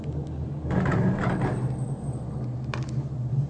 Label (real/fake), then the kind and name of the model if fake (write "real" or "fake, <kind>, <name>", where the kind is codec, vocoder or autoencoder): real